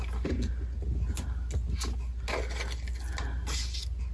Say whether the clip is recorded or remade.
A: recorded